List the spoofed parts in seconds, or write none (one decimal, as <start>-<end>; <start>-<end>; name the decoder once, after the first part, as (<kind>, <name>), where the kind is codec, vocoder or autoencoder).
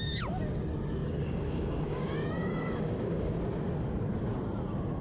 1.0-3.3 (codec, DAC)